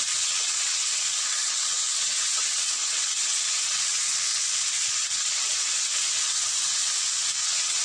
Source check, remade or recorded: remade